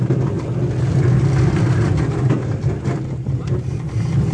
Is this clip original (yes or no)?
yes